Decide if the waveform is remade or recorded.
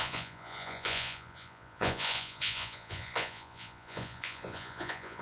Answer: remade